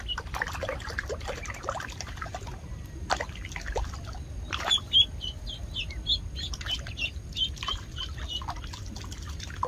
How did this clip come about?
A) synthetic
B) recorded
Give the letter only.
B